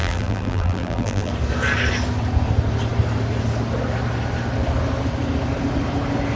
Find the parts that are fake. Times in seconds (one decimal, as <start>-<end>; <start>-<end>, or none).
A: 0.0-1.3